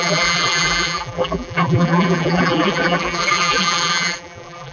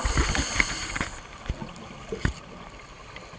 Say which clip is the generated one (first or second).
first